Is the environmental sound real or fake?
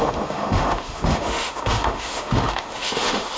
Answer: fake